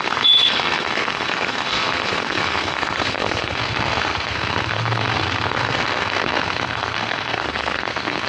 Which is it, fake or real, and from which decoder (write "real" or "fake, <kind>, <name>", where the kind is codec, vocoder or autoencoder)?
fake, codec, SNAC